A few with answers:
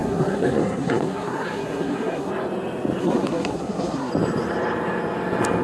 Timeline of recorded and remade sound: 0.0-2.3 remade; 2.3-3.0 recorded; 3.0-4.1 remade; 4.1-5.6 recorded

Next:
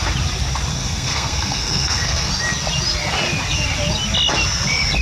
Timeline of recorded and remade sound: 0.0-0.7 recorded; 0.7-2.3 remade; 2.3-5.0 recorded

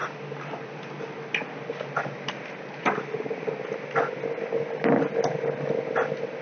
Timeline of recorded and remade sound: 0.0-6.4 recorded

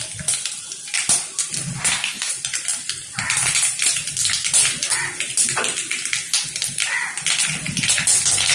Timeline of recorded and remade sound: 0.0-1.8 recorded; 1.8-2.3 remade; 2.3-8.5 recorded

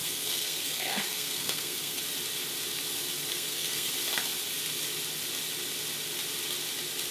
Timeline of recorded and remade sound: 0.0-2.0 remade; 2.0-3.3 recorded; 3.3-3.9 remade; 3.9-7.1 recorded

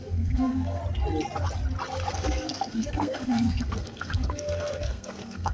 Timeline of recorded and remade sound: 0.0-0.8 remade; 0.8-2.1 recorded; 2.1-5.5 remade

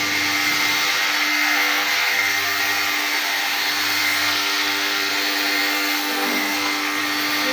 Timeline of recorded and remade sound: 0.0-1.3 recorded; 1.3-2.6 remade; 2.6-4.0 recorded; 4.0-5.1 remade; 5.1-5.6 recorded; 5.6-7.0 remade; 7.0-7.5 recorded

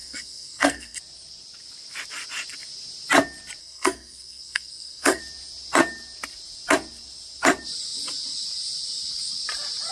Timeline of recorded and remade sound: 0.0-1.0 remade; 1.0-3.6 recorded; 3.6-5.2 remade; 5.2-9.9 recorded